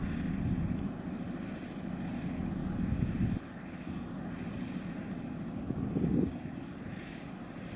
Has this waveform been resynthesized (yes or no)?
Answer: no